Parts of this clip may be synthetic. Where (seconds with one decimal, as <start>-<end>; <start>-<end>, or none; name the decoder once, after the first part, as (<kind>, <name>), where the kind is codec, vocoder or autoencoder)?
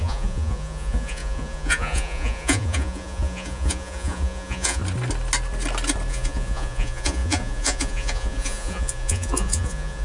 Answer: 0.0-4.8 (vocoder, Vocos); 6.1-10.0